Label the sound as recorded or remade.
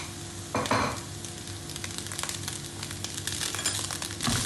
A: recorded